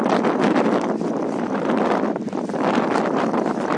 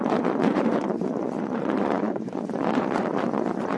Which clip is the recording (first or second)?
first